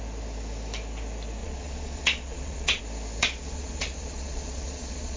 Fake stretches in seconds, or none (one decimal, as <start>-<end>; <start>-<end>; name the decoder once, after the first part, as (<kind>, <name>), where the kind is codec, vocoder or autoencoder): 1.4-2.8 (vocoder, Vocos); 3.2-5.2